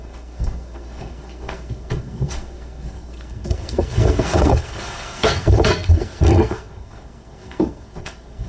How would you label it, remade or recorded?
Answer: remade